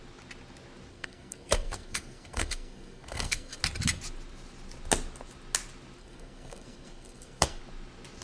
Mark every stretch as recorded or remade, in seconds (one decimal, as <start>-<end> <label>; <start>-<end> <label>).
0.0-0.9 recorded; 0.9-3.6 remade; 3.6-6.0 recorded; 6.0-7.6 remade; 7.6-8.2 recorded